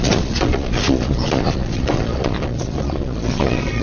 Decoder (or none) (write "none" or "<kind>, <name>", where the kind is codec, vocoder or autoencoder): vocoder, Vocos